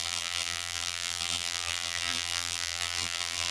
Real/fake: fake